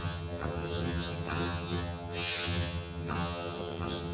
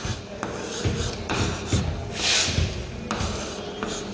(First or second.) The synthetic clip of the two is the first